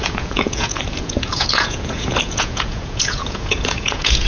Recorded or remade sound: remade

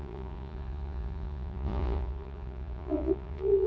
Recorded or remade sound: remade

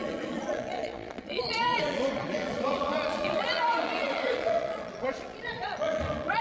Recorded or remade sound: remade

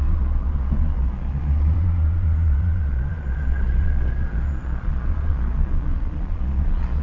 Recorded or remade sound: remade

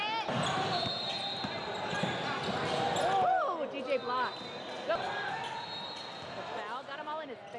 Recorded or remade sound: recorded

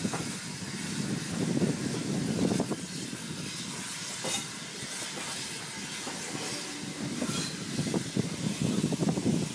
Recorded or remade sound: recorded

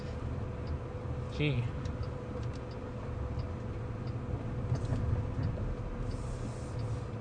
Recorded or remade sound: recorded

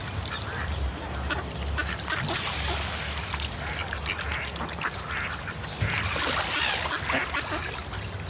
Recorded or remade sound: recorded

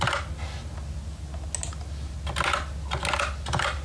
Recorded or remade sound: recorded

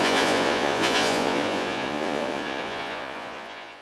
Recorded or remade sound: remade